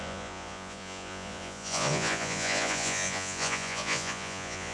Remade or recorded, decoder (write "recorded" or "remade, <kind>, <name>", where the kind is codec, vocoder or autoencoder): remade, vocoder, Vocos